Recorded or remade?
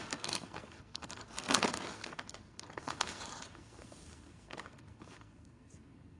remade